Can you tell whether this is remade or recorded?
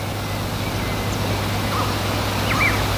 recorded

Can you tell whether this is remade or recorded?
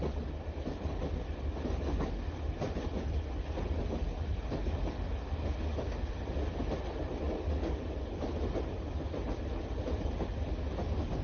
recorded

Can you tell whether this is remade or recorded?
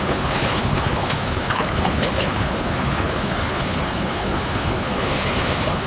remade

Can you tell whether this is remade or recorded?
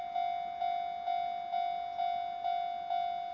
recorded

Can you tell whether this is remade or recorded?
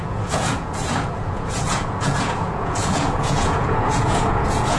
remade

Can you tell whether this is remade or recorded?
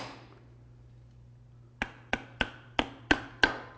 recorded